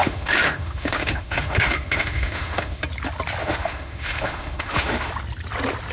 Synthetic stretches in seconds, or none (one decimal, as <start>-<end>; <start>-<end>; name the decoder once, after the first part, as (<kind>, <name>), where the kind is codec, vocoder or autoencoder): 0.0-2.8 (autoencoder, DAC-VAE); 3.4-5.1

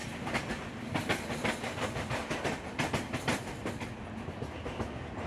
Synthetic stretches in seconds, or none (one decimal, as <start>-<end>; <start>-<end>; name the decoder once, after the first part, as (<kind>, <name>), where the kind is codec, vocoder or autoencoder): none